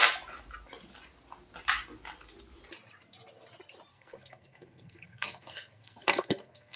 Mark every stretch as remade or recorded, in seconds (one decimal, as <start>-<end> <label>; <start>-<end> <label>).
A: 0.0-3.9 recorded; 3.9-6.8 remade